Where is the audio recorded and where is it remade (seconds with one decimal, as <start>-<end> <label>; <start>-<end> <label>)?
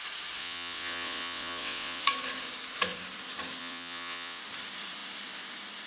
0.0-0.4 recorded; 0.4-2.0 remade; 2.0-3.6 recorded; 3.6-4.4 remade; 4.4-5.9 recorded